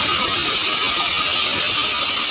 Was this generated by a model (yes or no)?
no